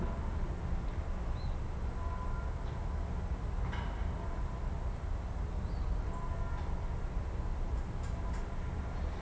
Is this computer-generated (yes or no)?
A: no